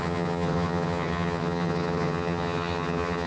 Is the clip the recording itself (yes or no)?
no